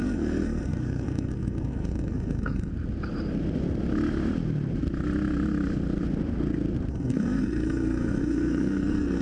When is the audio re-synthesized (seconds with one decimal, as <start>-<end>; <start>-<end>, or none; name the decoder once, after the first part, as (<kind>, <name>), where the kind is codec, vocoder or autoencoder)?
0.0-2.7 (codec, SNAC); 6.9-9.2